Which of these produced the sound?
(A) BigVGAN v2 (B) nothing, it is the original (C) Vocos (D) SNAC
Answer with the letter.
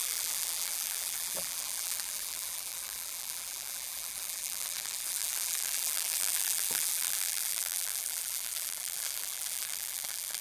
A